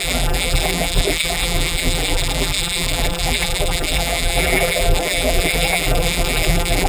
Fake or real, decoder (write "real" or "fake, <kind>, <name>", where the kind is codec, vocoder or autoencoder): fake, vocoder, BigVGAN v2